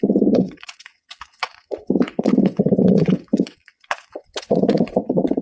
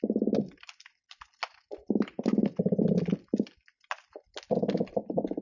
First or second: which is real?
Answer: second